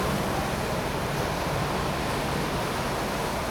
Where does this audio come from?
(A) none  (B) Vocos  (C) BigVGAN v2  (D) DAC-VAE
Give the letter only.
A